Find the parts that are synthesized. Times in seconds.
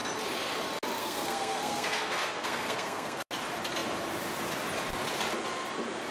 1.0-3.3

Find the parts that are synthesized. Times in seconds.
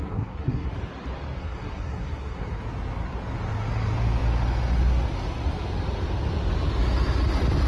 0.0-0.7; 1.4-2.6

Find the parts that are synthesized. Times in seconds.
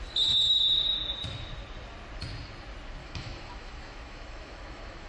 3.0-5.1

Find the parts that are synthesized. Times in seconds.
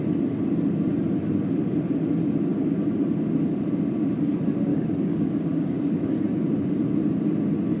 2.5-3.1; 4.7-6.1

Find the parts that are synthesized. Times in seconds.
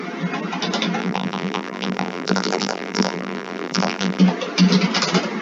1.0-4.2